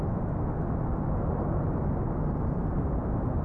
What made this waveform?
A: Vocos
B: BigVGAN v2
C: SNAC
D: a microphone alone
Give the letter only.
D